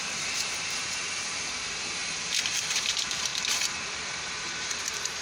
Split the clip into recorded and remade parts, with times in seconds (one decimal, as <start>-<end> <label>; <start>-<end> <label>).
0.0-2.0 remade; 2.0-2.7 recorded; 2.7-3.3 remade; 3.3-3.8 recorded; 3.8-5.2 remade